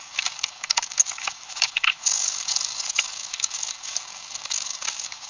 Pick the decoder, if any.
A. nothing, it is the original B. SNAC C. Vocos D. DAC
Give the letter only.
D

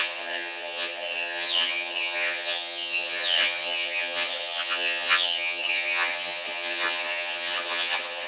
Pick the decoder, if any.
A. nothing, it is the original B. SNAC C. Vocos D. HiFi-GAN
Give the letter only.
D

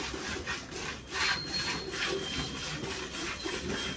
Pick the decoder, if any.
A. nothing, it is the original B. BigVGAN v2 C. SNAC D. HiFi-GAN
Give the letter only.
A